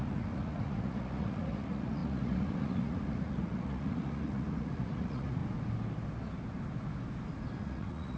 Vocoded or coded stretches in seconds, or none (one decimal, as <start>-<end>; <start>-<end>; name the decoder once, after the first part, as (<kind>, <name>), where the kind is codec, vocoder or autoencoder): 0.0-5.4 (vocoder, Vocos); 7.6-8.2